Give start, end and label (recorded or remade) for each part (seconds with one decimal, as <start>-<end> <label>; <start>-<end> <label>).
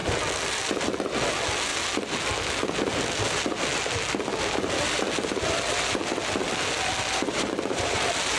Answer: 0.0-7.3 recorded; 7.3-8.0 remade; 8.0-8.4 recorded